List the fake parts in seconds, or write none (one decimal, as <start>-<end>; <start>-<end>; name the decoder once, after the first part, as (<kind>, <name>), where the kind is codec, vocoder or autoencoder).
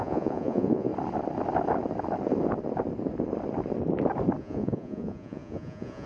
0.0-0.9 (vocoder, Vocos); 4.4-6.1